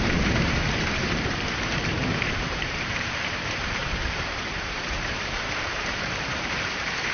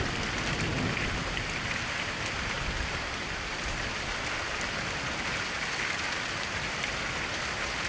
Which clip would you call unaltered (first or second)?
second